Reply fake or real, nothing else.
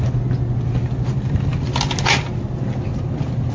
real